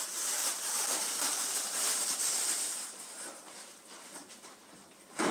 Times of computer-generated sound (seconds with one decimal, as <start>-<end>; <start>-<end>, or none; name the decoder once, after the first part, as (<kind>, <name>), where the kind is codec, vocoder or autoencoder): 0.0-5.3 (vocoder, BigVGAN v2)